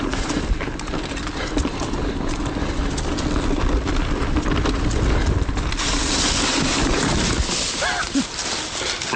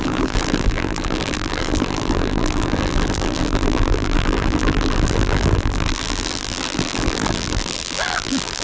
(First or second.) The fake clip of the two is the second